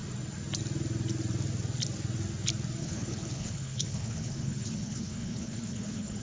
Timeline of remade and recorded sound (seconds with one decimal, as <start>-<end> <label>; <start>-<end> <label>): 0.0-2.8 recorded; 2.8-6.2 remade